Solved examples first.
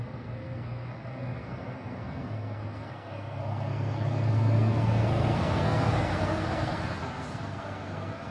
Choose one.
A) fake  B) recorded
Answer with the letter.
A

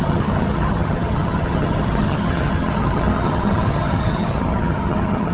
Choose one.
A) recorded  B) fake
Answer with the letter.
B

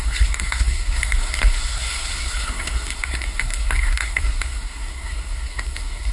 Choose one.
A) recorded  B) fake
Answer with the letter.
B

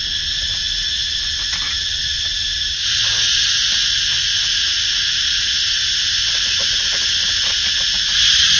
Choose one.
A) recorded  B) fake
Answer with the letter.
A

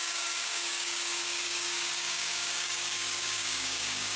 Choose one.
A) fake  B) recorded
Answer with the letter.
A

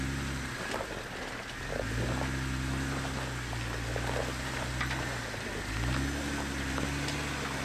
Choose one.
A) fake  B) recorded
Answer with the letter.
B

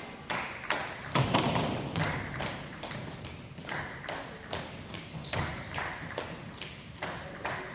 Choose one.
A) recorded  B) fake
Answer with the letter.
A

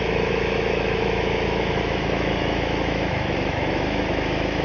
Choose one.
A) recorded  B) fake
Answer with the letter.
B